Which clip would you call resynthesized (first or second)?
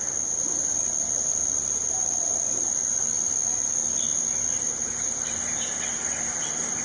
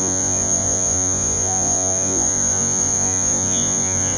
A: second